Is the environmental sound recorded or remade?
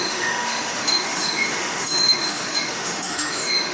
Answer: remade